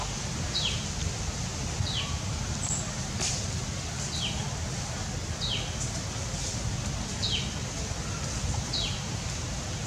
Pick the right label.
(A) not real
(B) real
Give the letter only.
B